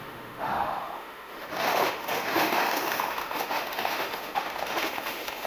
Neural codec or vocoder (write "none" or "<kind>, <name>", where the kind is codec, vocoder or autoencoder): autoencoder, DAC-VAE